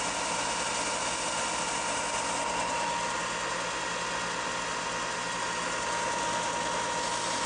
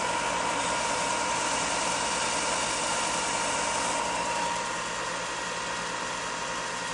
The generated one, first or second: second